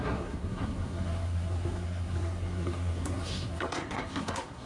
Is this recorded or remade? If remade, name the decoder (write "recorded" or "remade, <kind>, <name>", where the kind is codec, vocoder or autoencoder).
remade, codec, SNAC